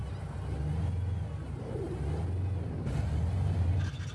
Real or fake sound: real